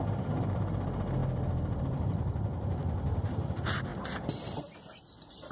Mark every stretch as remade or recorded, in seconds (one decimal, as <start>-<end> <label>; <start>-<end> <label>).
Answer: 0.0-3.9 remade; 3.9-5.1 recorded; 5.1-5.5 remade